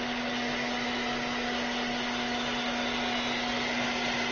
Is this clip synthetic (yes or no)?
no